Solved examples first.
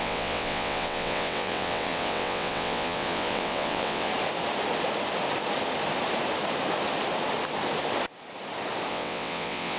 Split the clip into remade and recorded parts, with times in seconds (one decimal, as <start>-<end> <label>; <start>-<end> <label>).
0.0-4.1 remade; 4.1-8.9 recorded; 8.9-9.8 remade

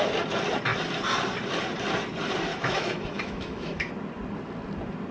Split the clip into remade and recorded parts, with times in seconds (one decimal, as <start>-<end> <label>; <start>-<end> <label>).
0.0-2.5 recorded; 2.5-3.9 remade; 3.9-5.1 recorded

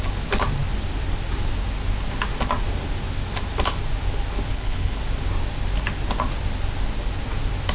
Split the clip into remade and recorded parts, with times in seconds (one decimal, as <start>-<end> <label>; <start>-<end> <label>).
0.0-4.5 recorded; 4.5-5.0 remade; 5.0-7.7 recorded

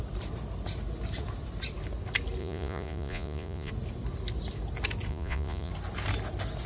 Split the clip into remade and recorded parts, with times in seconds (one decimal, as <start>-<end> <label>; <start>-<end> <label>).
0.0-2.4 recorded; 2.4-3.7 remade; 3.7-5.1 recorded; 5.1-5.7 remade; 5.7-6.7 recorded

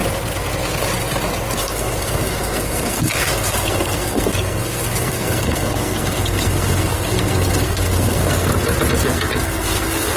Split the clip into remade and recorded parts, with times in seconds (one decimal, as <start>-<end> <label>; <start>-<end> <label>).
0.0-1.6 recorded; 1.6-8.5 remade; 8.5-9.0 recorded; 9.0-10.2 remade

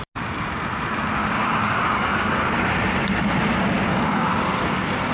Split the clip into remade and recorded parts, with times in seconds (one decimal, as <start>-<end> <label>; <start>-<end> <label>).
0.0-1.2 recorded; 1.2-2.3 remade; 2.3-3.9 recorded; 3.9-4.6 remade; 4.6-5.1 recorded

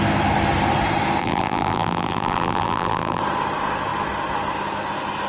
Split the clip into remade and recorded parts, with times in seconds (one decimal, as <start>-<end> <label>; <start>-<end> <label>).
0.0-1.2 recorded; 1.2-3.2 remade; 3.2-5.3 recorded

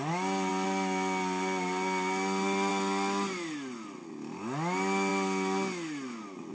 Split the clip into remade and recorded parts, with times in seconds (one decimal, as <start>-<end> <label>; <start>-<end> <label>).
0.0-6.5 recorded